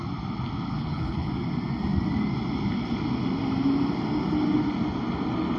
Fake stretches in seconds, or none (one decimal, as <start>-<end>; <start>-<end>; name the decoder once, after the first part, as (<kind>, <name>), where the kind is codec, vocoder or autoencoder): 0.7-1.3 (codec, HILCodec)